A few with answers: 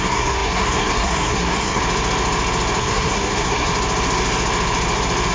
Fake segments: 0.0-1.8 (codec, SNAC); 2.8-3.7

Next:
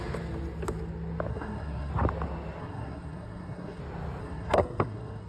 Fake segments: 1.3-1.9 (codec, SNAC); 2.6-3.8; 4.2-5.3

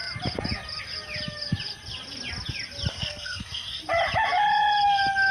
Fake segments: 2.9-3.8 (codec, SNAC)

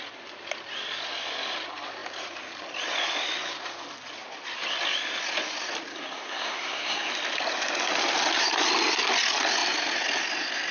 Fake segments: 5.9-7.1 (codec, SNAC)

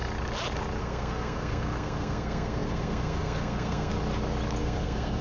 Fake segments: 0.8-3.9 (codec, SNAC); 4.6-5.2